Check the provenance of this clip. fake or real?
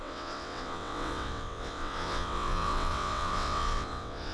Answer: fake